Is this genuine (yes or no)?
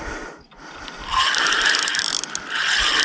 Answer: yes